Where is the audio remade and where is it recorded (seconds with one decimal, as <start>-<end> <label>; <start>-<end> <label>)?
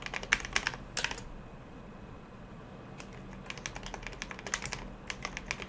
0.0-1.2 recorded; 1.2-2.6 remade; 2.6-5.7 recorded